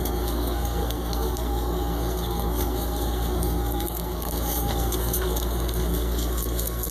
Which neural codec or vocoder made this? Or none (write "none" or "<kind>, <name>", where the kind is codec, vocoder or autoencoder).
codec, SNAC